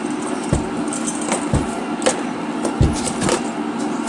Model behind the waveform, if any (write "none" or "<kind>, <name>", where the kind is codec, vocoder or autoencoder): none